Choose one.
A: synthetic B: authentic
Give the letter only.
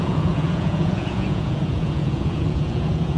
A